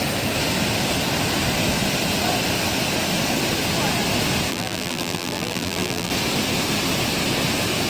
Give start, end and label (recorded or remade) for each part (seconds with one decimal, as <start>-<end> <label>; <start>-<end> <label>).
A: 0.0-4.5 recorded; 4.5-6.1 remade; 6.1-7.9 recorded